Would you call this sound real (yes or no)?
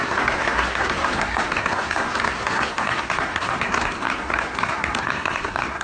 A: no